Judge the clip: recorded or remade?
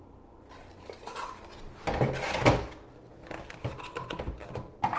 recorded